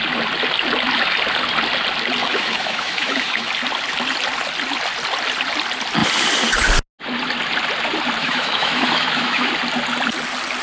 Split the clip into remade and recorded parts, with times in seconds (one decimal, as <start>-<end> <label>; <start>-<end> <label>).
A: 0.0-2.2 recorded; 2.2-3.5 remade; 3.5-8.2 recorded; 8.2-9.5 remade; 9.5-10.6 recorded